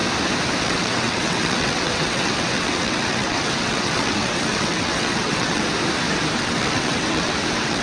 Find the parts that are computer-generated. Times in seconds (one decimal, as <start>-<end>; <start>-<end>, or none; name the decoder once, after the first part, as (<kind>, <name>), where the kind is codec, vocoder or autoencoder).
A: 0.6-5.6 (vocoder, WaveNeXt); 6.4-7.8

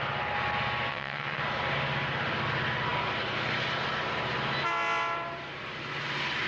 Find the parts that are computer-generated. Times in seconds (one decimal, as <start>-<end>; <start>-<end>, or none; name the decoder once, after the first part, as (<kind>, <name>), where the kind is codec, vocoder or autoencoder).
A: 0.9-1.4 (vocoder, WaveNeXt)